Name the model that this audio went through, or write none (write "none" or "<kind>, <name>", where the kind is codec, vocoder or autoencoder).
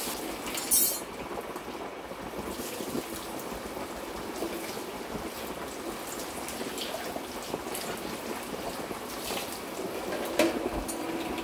none